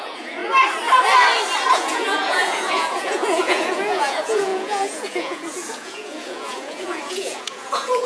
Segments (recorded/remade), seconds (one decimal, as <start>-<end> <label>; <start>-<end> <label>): 0.0-0.4 remade; 0.4-1.7 recorded; 1.7-8.1 remade